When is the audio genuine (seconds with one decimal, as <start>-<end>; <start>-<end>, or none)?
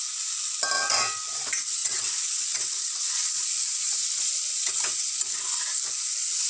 0.0-1.8; 4.1-4.5; 5.2-6.5